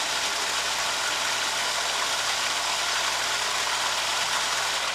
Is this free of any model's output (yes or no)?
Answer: yes